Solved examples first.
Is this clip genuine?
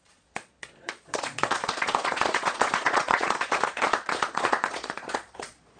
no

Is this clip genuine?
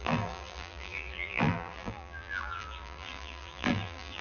no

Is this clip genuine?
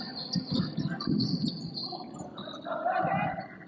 yes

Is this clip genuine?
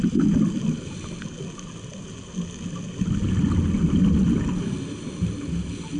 yes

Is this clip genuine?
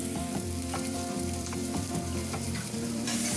no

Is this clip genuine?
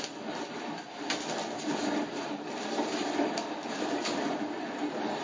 no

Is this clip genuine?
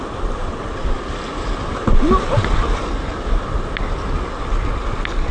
yes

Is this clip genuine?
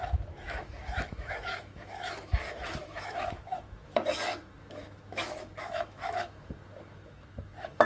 no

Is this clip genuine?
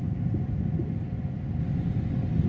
yes